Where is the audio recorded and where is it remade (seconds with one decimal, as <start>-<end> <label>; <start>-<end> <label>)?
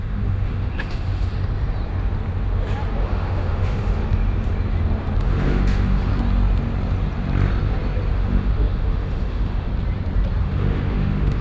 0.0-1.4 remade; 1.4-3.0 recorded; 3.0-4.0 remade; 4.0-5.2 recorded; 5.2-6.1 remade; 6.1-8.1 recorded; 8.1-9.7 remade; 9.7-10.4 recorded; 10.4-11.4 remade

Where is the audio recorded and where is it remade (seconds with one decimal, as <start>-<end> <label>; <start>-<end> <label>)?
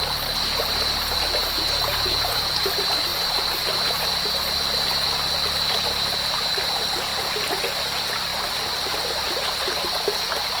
0.0-1.4 recorded; 1.4-2.7 remade; 2.7-10.6 recorded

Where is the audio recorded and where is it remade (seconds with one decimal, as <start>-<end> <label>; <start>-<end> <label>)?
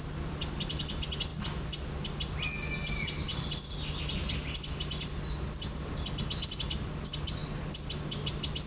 0.0-8.7 recorded